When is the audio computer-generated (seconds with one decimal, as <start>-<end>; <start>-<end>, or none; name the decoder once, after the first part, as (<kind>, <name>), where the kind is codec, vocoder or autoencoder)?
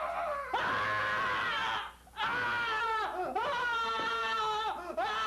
3.4-4.4 (vocoder, BigVGAN v2)